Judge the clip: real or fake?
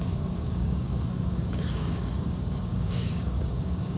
fake